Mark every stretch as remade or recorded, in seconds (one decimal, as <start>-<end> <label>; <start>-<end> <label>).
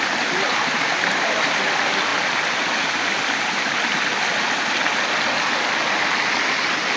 0.0-0.5 recorded; 0.5-1.2 remade; 1.2-7.0 recorded